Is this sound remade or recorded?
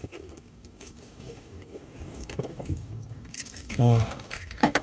remade